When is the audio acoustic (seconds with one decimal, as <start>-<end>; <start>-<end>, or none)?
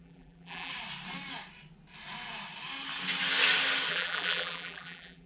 0.7-3.9